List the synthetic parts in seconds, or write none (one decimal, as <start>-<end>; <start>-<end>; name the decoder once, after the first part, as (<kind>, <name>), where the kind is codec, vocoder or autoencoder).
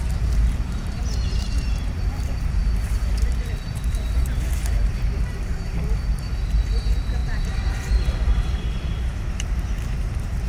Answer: 0.0-10.5 (vocoder, BigVGAN v2)